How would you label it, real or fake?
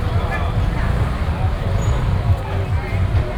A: real